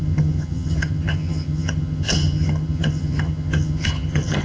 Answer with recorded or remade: remade